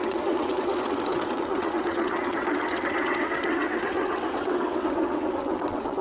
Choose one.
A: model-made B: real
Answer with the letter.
A